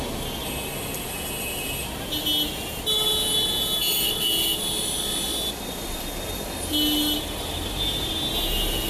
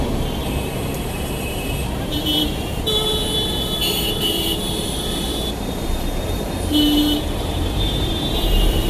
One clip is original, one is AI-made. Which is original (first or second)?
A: first